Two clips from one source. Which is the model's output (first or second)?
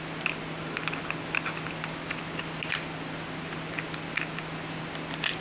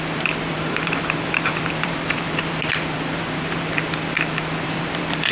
second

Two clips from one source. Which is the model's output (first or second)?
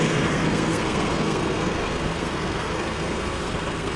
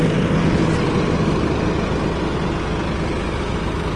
first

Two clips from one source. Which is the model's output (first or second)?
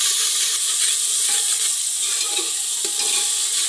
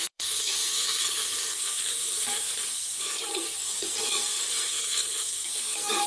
second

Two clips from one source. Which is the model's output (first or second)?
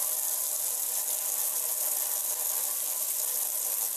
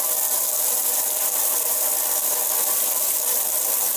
second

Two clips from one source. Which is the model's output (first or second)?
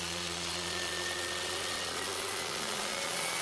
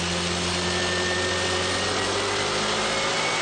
first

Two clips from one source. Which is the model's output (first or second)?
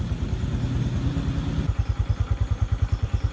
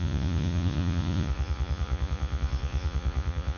second